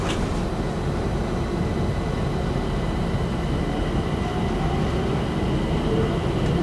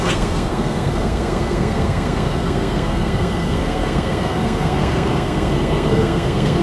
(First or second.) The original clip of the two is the first